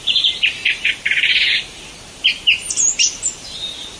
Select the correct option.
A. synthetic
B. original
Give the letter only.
A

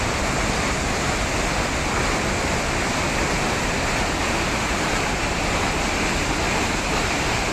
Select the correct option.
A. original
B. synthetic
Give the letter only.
A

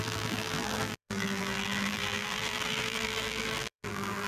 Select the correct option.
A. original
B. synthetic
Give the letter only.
B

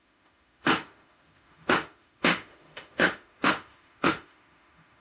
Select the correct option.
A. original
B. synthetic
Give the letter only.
B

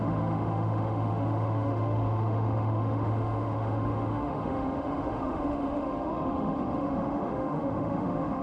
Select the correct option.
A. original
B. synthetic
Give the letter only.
B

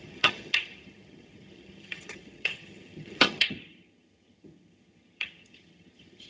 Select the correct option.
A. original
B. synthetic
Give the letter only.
B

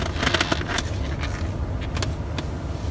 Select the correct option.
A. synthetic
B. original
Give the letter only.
B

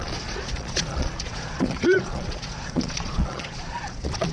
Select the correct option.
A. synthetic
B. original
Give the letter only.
A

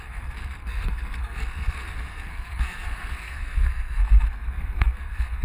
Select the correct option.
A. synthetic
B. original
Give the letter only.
A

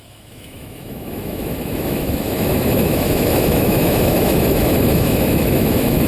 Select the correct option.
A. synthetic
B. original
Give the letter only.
A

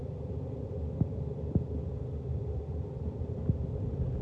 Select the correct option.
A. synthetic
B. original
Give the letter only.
B